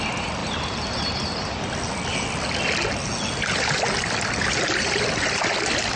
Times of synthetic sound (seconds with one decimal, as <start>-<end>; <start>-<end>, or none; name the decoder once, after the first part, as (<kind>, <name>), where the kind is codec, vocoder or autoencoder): none